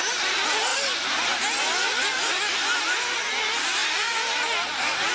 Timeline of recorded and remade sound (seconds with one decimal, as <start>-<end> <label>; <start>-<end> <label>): 0.0-5.1 recorded